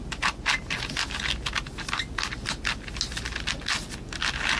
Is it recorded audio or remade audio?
recorded